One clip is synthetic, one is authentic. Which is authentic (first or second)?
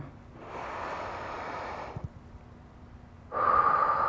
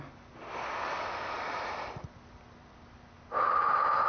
second